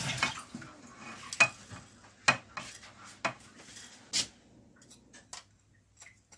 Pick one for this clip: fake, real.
real